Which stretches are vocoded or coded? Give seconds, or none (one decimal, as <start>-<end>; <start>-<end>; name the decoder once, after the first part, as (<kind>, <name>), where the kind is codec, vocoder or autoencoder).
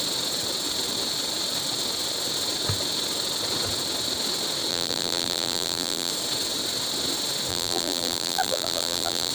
4.7-6.1 (vocoder, BigVGAN v2); 7.5-9.3